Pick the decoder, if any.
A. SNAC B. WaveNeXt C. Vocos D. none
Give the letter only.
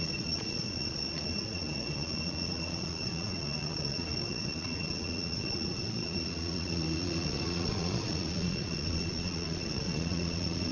C